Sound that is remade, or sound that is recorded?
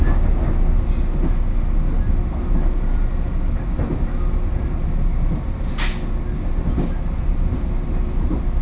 recorded